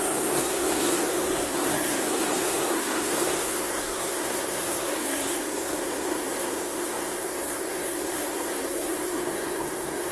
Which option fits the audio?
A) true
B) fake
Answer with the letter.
B